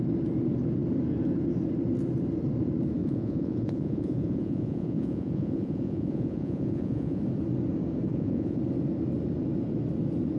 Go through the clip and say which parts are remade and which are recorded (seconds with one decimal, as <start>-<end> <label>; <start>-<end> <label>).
0.0-3.0 recorded; 3.0-7.2 remade; 7.2-8.1 recorded; 8.1-8.6 remade; 8.6-10.4 recorded